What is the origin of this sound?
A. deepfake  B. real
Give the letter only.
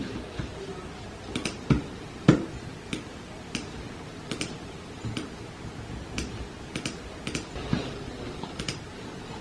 B